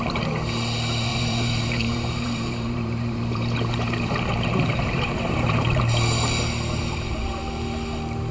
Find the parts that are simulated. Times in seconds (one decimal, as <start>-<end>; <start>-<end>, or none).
1.1-5.8; 6.8-7.3